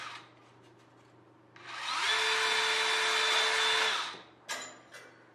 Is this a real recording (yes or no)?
yes